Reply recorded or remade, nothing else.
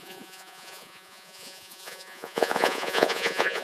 remade